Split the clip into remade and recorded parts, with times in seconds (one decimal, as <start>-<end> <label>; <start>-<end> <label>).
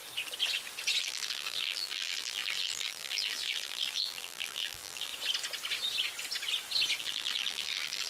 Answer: 0.0-1.0 recorded; 1.0-5.1 remade; 5.1-7.0 recorded; 7.0-8.1 remade